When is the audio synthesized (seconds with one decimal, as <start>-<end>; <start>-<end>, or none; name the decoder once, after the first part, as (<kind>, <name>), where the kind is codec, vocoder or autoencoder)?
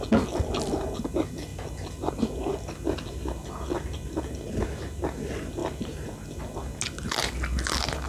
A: none